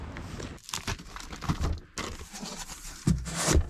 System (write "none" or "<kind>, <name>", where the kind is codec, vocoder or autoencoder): none